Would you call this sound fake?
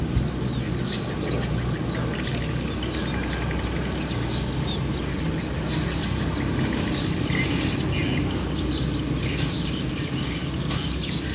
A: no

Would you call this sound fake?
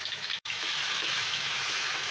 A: yes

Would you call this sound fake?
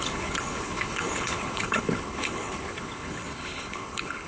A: yes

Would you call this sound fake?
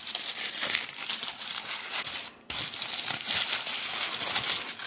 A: no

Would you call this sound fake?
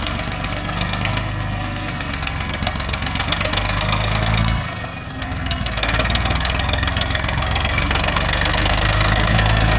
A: yes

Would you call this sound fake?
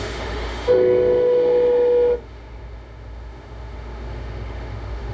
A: yes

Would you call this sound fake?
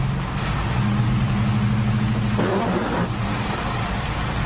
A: no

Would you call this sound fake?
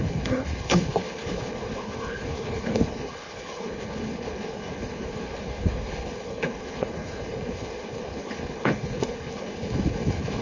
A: yes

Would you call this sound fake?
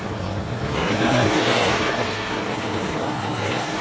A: yes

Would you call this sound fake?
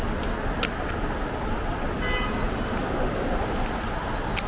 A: no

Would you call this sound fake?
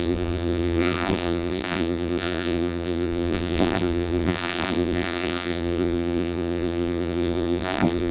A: yes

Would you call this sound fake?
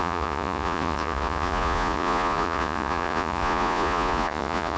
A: yes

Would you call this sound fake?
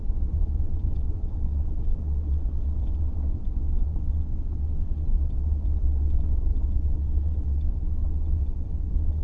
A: yes